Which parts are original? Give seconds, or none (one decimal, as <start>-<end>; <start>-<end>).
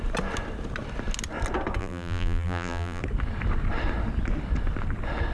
0.0-1.8; 3.0-5.3